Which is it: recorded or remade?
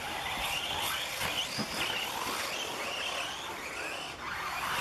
recorded